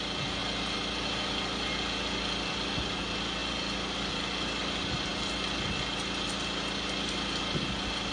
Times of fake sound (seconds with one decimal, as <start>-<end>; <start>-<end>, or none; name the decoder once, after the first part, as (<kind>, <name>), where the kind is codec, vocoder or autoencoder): 0.4-1.7 (vocoder, BigVGAN v2)